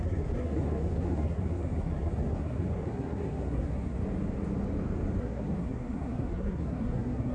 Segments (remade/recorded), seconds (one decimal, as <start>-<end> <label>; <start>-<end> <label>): 0.0-4.0 remade; 4.0-5.2 recorded; 5.2-7.3 remade